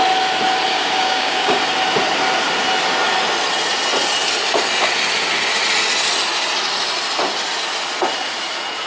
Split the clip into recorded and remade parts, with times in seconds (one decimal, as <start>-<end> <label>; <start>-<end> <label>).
0.0-0.7 recorded; 0.7-1.6 remade; 1.6-8.9 recorded